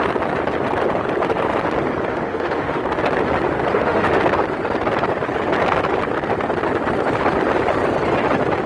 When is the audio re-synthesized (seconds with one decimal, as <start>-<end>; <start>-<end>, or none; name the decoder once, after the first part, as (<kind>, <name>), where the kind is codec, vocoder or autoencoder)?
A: 2.1-2.8 (autoencoder, DAC-VAE); 3.7-4.2